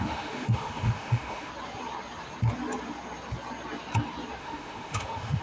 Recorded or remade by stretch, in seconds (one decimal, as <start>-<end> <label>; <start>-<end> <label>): 0.0-1.5 remade; 1.5-4.4 recorded; 4.4-5.4 remade